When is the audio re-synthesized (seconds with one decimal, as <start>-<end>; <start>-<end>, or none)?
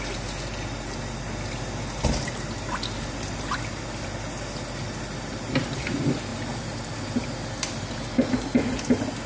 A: none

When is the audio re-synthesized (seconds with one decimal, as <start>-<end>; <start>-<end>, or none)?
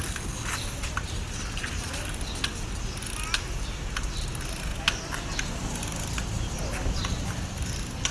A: none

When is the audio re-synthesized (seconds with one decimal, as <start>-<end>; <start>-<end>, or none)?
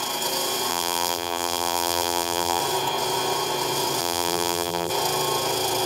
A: 0.7-2.6; 4.0-4.9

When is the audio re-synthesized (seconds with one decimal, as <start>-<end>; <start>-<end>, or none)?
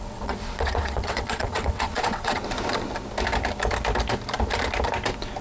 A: 0.0-2.4